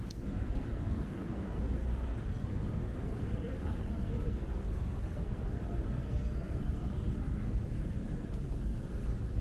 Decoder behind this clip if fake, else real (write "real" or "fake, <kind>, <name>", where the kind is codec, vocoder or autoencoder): fake, codec, SNAC